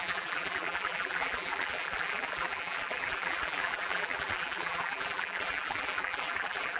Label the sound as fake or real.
fake